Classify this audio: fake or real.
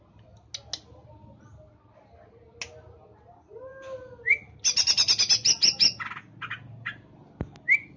real